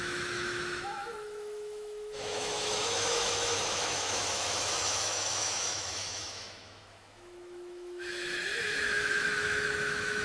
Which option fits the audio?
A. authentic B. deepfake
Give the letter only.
B